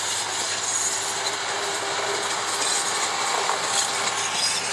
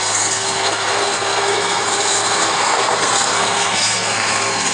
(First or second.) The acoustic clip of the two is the first